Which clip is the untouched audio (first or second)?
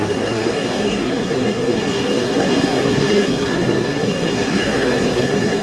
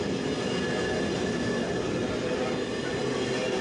second